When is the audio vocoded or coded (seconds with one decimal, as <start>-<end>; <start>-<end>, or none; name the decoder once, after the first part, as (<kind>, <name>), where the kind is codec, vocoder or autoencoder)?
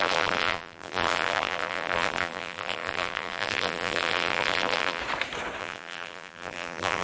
0.0-5.0 (vocoder, BigVGAN v2); 5.6-7.0